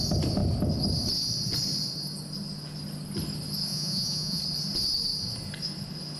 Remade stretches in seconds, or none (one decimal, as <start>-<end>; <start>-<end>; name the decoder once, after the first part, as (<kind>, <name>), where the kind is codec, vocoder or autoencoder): 3.7-4.4 (vocoder, Vocos)